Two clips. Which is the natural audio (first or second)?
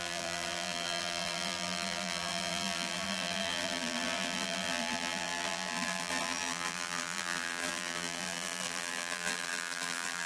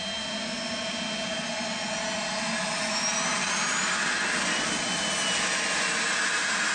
second